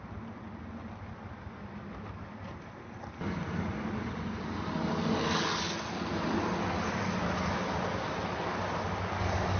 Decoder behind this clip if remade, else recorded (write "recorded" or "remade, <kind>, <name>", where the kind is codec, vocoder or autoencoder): recorded